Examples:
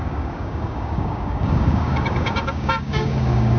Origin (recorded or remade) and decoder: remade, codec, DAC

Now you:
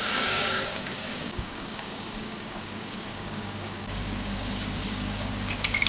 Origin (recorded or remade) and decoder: remade, codec, DAC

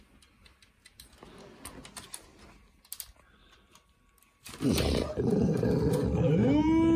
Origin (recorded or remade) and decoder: recorded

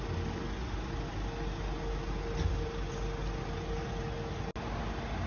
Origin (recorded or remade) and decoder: recorded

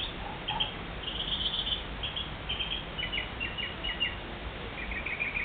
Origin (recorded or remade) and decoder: recorded